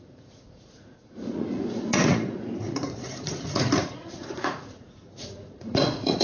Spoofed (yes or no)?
yes